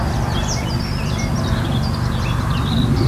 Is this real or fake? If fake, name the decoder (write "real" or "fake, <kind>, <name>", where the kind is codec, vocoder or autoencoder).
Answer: real